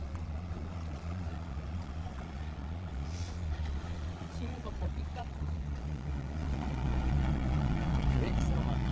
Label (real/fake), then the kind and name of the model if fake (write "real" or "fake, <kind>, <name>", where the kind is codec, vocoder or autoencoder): fake, vocoder, Vocos